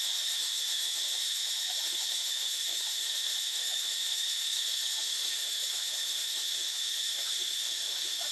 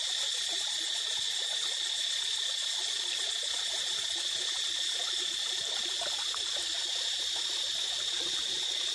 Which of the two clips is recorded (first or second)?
second